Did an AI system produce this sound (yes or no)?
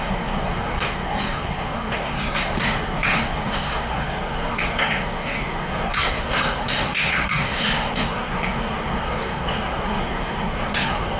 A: yes